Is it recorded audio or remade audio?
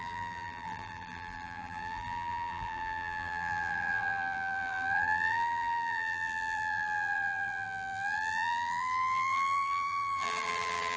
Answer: remade